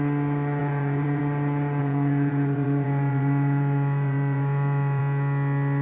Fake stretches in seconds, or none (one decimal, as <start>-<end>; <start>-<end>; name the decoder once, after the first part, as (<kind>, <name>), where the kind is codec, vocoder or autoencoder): 0.6-1.2 (vocoder, Vocos); 1.8-5.0